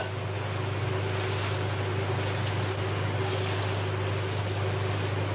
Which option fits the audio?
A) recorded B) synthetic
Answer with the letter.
A